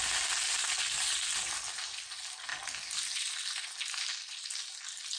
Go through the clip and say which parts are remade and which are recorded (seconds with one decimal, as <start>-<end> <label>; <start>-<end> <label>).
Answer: 0.0-5.2 recorded